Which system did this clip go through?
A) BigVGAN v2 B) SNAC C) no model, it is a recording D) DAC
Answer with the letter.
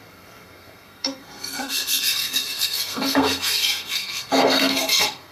B